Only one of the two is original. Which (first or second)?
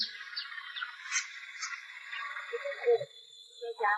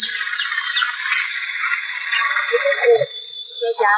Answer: second